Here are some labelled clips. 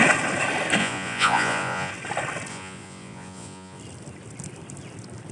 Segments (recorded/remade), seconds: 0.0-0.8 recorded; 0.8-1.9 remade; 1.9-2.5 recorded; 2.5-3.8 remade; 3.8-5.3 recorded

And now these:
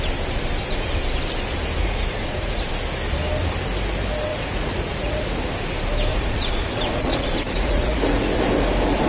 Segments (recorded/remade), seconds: 0.0-1.8 recorded; 1.8-2.7 remade; 2.7-4.3 recorded; 4.3-5.2 remade; 5.2-6.1 recorded; 6.1-8.4 remade; 8.4-9.1 recorded

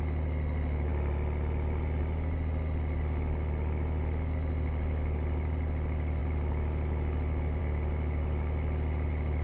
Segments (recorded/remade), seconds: 0.0-9.4 recorded